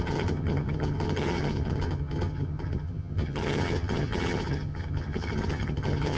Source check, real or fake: fake